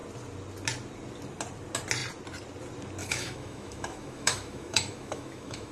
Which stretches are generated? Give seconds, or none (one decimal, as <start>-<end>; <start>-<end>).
3.0-5.7